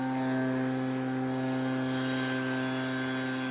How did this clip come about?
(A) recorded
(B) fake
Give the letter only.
A